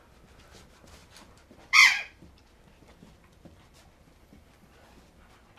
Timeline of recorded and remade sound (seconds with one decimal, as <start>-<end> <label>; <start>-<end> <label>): 0.0-1.0 recorded; 1.0-4.4 remade; 4.4-5.6 recorded